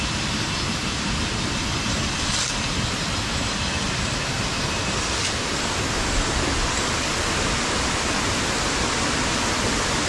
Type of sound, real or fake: real